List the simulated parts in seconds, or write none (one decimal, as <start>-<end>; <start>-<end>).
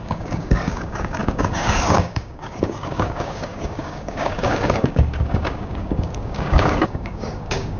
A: 0.0-7.8